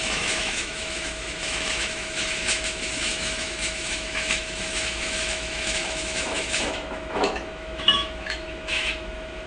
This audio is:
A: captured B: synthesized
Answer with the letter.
B